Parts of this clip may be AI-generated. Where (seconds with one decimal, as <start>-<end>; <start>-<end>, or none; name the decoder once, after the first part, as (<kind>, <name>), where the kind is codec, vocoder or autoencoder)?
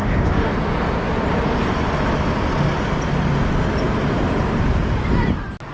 0.0-0.5 (autoencoder, DAC-VAE)